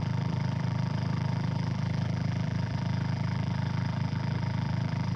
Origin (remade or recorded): remade